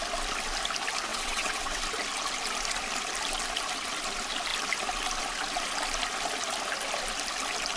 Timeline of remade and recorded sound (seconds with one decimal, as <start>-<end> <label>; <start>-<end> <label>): 0.0-1.1 recorded; 1.1-1.8 remade; 1.8-7.8 recorded